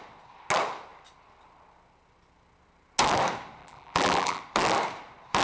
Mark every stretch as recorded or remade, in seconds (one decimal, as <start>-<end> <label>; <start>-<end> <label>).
0.0-3.6 recorded; 3.6-4.4 remade; 4.4-5.4 recorded